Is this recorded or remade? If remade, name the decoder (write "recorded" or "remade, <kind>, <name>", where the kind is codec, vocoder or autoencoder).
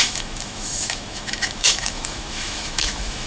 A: remade, autoencoder, DAC-VAE